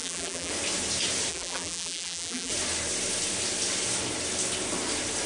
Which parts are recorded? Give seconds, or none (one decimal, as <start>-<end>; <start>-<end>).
0.5-1.3; 2.5-5.3